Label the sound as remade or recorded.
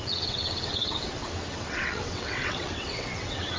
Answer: remade